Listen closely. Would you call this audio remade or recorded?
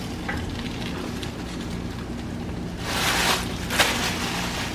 recorded